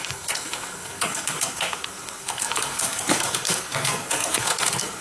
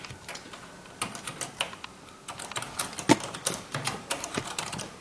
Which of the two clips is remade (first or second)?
first